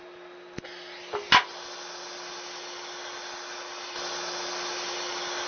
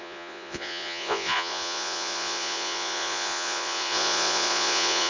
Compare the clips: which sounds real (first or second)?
first